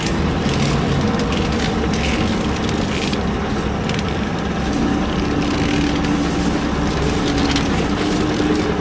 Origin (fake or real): real